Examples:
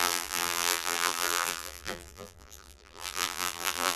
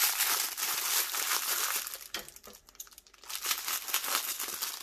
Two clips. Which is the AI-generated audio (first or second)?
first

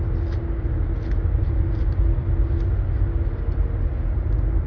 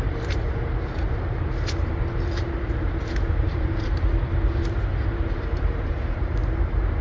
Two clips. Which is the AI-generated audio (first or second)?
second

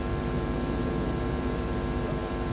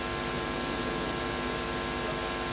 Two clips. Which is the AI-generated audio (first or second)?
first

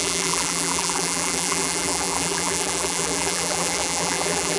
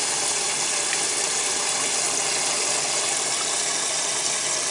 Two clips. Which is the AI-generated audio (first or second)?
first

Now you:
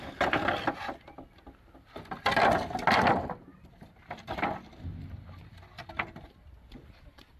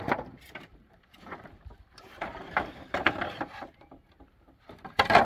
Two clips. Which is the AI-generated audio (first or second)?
second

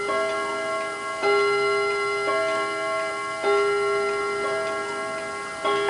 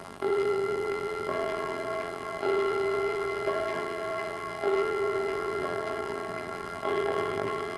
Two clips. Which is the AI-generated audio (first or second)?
second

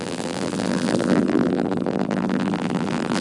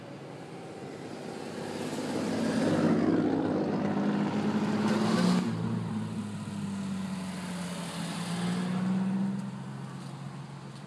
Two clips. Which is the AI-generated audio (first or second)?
first